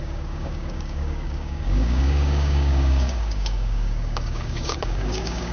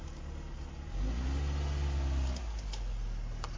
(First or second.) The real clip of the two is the second